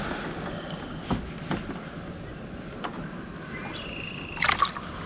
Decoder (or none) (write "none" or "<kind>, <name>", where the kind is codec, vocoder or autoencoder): none